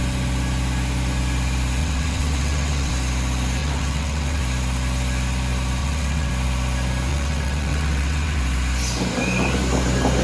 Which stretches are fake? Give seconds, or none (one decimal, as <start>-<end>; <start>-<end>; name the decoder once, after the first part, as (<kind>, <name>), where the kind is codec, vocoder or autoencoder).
1.8-2.9 (vocoder, WaveNeXt); 3.6-4.4; 5.8-6.3; 7.1-8.4